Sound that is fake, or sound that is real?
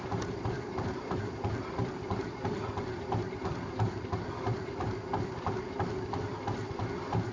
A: fake